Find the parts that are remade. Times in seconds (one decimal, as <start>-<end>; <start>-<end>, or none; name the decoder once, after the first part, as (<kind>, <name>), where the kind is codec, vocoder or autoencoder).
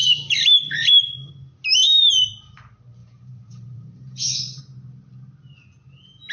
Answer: 0.0-1.3 (vocoder, BigVGAN v2); 3.0-4.6